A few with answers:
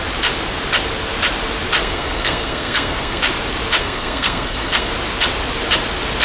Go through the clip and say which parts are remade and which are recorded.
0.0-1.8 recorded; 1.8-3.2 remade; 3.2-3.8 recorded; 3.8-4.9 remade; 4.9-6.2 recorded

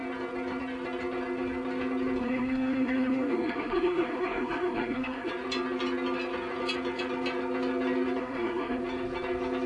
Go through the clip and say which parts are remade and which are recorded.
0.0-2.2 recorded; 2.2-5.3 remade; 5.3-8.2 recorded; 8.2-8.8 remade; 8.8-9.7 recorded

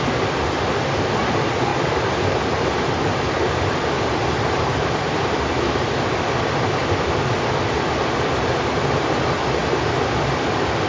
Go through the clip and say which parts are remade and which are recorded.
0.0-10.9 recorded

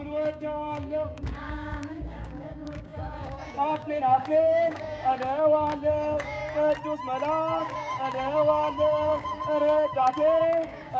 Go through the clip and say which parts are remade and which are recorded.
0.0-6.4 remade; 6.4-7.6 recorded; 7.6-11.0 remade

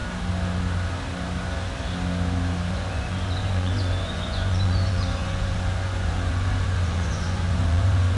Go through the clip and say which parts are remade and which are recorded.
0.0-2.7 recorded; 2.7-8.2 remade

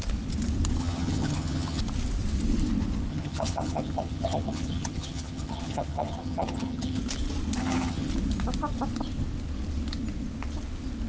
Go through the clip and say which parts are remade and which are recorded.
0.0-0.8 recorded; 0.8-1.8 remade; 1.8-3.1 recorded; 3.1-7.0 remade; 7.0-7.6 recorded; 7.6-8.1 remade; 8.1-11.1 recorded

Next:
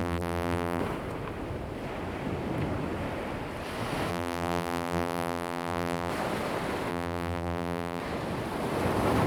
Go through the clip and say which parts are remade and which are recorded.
0.0-0.8 remade; 0.8-4.1 recorded; 4.1-6.1 remade; 6.1-6.9 recorded; 6.9-8.0 remade; 8.0-9.3 recorded